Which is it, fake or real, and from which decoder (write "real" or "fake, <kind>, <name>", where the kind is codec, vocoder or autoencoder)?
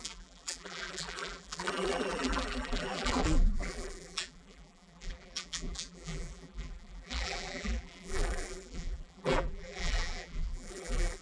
fake, vocoder, BigVGAN v2